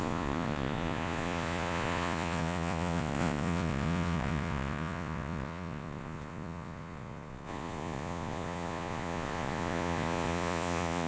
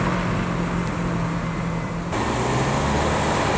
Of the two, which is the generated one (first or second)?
first